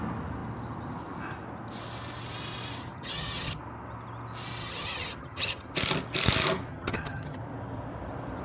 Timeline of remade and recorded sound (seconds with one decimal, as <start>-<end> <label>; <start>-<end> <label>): 0.0-2.8 recorded; 2.8-3.6 remade; 3.6-4.6 recorded; 4.6-5.7 remade; 5.7-6.7 recorded; 6.7-7.4 remade; 7.4-8.4 recorded